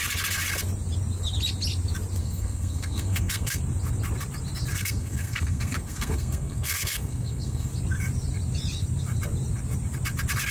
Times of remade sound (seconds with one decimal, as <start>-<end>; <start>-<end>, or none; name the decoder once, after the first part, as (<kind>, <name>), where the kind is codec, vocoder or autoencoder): 2.2-3.6 (codec, SNAC); 4.7-7.7